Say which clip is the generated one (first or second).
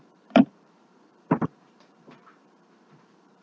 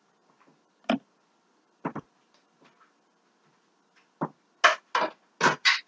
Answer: first